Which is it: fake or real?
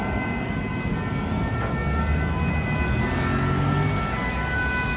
real